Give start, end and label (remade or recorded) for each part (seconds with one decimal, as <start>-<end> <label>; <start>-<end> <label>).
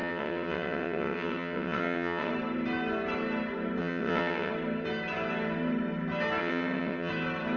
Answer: 0.0-2.3 remade; 2.3-3.8 recorded; 3.8-4.5 remade; 4.5-6.4 recorded; 6.4-7.1 remade; 7.1-7.6 recorded